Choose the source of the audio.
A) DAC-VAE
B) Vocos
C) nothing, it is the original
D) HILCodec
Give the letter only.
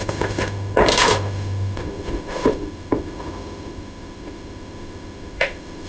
A